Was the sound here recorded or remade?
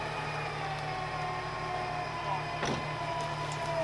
recorded